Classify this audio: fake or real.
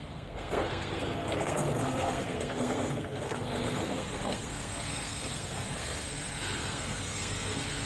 fake